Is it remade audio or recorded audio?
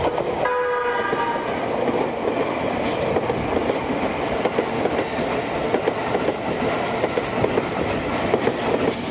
recorded